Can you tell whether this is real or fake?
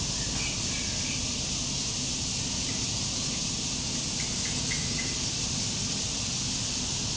real